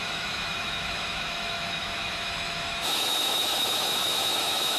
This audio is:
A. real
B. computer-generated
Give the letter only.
B